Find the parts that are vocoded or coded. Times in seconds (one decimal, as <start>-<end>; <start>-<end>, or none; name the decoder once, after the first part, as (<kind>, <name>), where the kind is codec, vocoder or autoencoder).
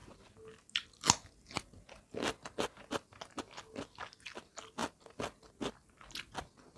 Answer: none